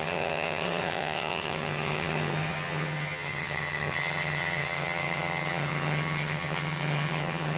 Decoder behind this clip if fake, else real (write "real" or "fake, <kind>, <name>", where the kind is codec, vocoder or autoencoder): fake, vocoder, HiFi-GAN